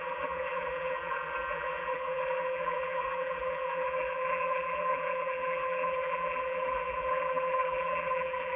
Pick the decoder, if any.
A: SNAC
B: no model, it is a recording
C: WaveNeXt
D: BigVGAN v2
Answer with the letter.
D